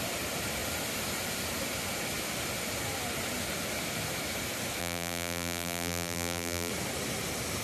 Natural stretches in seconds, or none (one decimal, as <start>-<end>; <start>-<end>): 0.0-4.8; 6.7-7.6